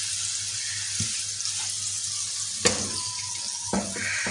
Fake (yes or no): no